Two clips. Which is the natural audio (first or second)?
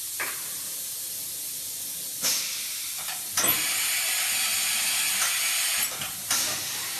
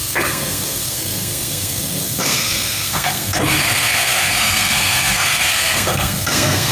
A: first